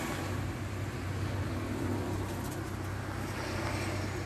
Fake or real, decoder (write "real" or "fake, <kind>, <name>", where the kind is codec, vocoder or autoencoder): real